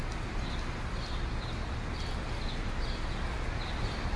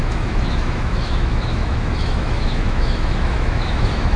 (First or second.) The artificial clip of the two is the second